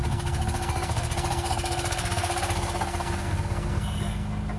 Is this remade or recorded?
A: remade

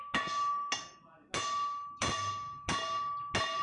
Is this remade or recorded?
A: recorded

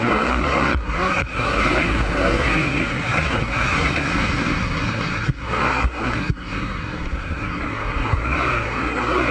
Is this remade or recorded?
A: remade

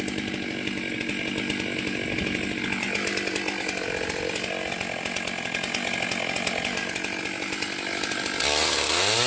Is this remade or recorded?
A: recorded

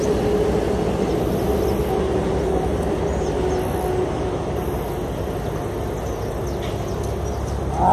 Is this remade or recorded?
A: recorded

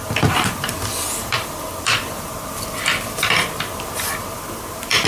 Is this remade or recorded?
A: remade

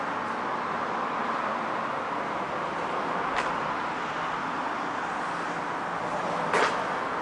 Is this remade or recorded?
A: recorded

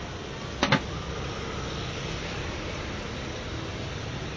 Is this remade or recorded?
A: recorded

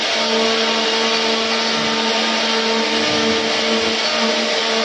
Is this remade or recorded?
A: recorded